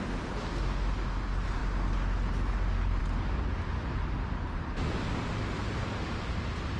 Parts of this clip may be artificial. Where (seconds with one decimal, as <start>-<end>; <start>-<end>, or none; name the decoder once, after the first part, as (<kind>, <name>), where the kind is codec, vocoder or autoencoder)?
none